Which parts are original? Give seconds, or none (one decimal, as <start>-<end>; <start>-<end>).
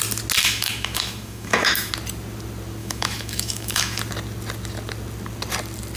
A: 0.0-0.4; 1.9-2.8; 4.0-6.0